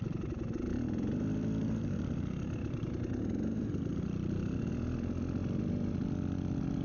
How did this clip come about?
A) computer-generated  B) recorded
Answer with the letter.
B